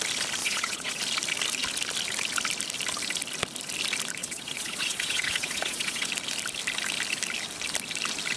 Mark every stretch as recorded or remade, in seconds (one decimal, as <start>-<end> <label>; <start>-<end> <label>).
0.0-0.4 recorded; 0.4-1.0 remade; 1.0-4.2 recorded; 4.2-6.1 remade; 6.1-8.4 recorded